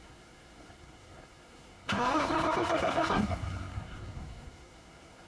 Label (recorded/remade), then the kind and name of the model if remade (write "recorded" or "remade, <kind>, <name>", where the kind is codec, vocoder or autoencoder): remade, codec, SNAC